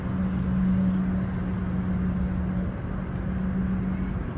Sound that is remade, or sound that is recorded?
recorded